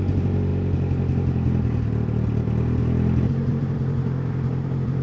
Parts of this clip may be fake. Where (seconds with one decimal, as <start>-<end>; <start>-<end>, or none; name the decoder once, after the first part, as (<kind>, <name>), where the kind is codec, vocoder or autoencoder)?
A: 0.0-0.5 (vocoder, BigVGAN v2); 3.5-5.0